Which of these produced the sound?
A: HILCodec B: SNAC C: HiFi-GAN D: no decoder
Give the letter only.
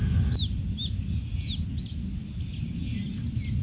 D